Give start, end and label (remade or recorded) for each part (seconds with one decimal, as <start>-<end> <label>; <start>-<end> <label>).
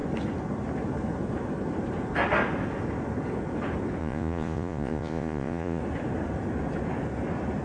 0.0-4.0 recorded; 4.0-5.8 remade; 5.8-7.6 recorded